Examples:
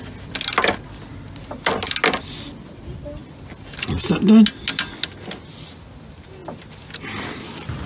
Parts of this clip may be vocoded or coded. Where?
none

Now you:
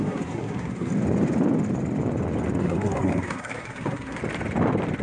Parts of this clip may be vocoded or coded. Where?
0.0-0.9 (codec, SNAC); 2.6-4.2

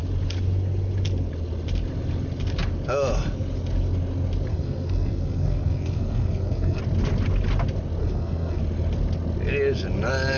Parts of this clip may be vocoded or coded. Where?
4.5-6.8 (codec, SNAC); 8.0-8.6

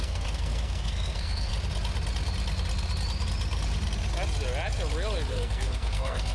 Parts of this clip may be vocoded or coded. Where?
0.0-1.5 (codec, SNAC); 5.3-6.3